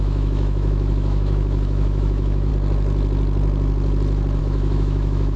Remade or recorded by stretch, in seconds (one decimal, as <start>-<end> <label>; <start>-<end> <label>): 0.0-2.5 remade; 2.5-4.4 recorded; 4.4-5.4 remade